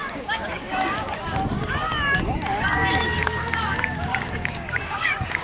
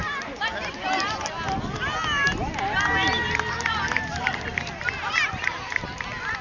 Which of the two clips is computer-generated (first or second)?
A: first